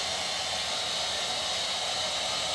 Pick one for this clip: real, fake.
real